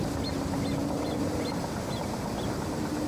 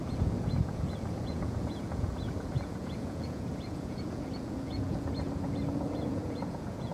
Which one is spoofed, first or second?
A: second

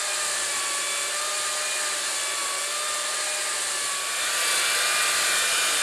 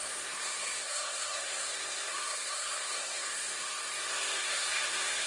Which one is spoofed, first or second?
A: second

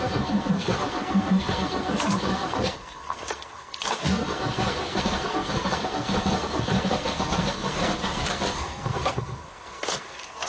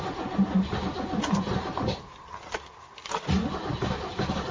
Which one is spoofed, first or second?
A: first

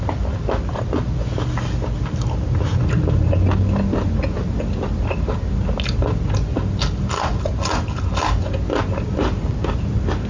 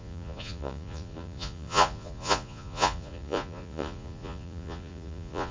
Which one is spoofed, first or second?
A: second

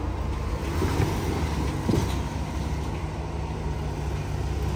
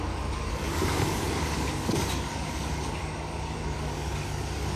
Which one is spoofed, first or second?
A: second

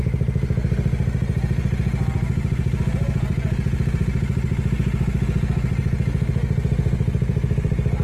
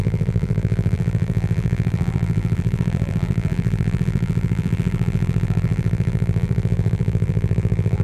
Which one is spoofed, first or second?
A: second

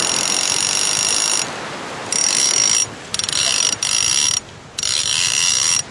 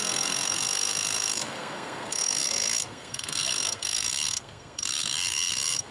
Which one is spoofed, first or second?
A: second